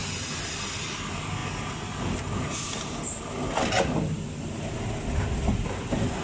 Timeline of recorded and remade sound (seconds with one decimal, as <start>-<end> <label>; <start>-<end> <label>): 0.0-6.2 recorded